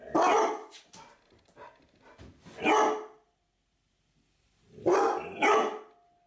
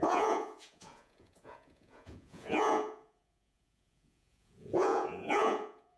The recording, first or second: first